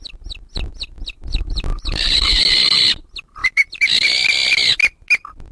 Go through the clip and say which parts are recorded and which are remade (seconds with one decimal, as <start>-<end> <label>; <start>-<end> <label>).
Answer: 0.0-1.7 recorded; 1.7-2.4 remade; 2.4-3.4 recorded; 3.4-3.9 remade; 3.9-5.5 recorded